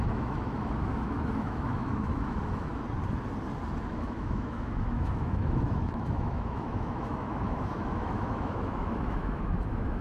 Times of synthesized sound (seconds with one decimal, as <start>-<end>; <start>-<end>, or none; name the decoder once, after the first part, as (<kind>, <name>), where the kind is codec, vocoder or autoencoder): 0.0-2.7 (autoencoder, DAC-VAE); 3.8-10.0